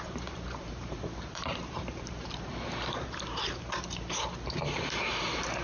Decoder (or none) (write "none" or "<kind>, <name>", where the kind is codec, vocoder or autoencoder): vocoder, BigVGAN v2